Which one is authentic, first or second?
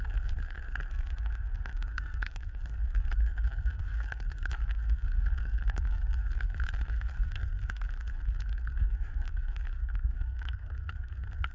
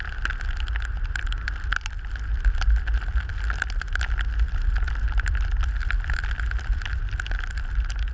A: second